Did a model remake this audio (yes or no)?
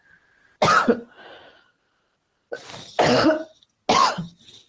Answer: no